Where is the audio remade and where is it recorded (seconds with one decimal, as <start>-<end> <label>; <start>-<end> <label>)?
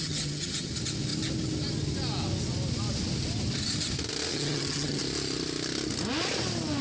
0.0-0.7 remade; 0.7-4.3 recorded; 4.3-5.0 remade; 5.0-6.8 recorded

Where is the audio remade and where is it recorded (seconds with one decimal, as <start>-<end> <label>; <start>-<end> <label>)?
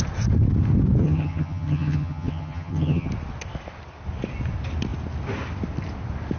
0.0-1.0 recorded; 1.0-3.1 remade; 3.1-6.4 recorded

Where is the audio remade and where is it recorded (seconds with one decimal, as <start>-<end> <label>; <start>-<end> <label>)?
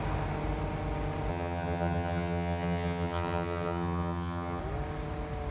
0.0-1.3 recorded; 1.3-4.6 remade; 4.6-5.5 recorded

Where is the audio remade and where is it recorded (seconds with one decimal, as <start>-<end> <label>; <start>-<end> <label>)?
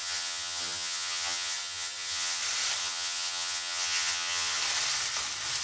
0.0-2.4 remade; 2.4-2.8 recorded; 2.8-4.6 remade; 4.6-5.6 recorded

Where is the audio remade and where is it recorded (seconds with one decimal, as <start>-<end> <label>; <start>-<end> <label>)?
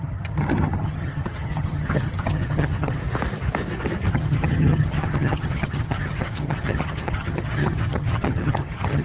0.0-3.0 remade; 3.0-4.1 recorded; 4.1-9.0 remade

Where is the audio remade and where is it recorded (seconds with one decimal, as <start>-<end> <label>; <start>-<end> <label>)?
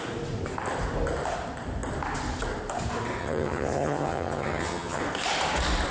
0.0-3.2 recorded; 3.2-5.0 remade; 5.0-5.9 recorded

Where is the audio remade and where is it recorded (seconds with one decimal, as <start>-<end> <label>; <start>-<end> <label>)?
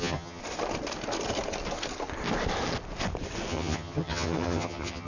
0.0-0.4 remade; 0.4-3.5 recorded; 3.5-5.1 remade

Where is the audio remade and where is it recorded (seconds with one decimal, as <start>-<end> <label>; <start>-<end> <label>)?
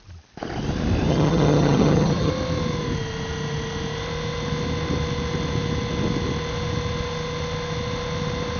0.0-1.1 recorded; 1.1-2.3 remade; 2.3-8.6 recorded